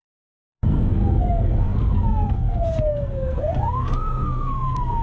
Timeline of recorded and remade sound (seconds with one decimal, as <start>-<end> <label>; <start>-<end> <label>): 0.0-5.0 remade